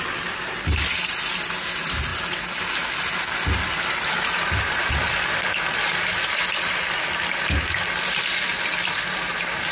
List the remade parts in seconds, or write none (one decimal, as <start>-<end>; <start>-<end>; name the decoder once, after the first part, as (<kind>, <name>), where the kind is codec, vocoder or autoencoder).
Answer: none